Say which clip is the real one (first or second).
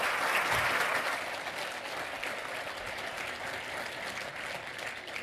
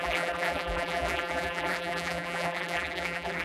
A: first